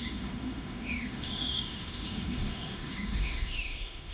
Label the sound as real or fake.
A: fake